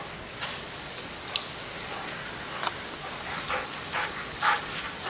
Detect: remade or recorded remade